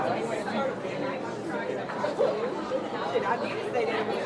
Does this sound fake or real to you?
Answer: real